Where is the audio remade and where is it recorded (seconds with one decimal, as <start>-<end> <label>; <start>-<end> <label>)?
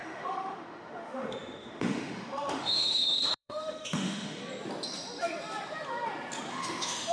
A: 0.0-4.4 remade; 4.4-6.5 recorded; 6.5-7.1 remade